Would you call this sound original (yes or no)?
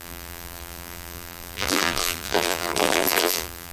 no